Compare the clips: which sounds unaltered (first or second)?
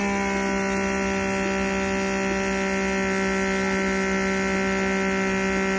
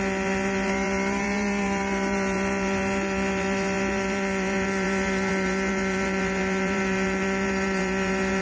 first